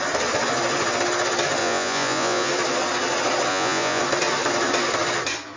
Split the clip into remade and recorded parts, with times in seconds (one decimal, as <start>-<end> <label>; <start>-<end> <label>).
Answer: 0.0-1.6 recorded; 1.6-2.5 remade; 2.5-3.5 recorded; 3.5-4.0 remade; 4.0-5.6 recorded